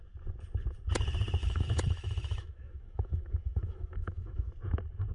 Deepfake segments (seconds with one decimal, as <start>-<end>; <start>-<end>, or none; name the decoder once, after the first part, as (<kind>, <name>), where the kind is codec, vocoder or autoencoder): 1.4-4.5 (autoencoder, DAC-VAE)